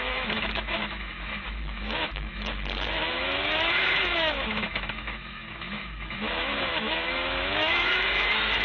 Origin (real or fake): fake